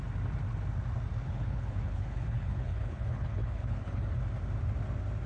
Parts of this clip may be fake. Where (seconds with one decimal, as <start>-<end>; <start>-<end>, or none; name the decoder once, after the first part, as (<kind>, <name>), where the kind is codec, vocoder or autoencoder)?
1.2-4.1 (codec, HILCodec)